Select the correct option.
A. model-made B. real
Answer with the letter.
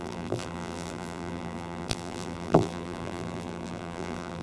A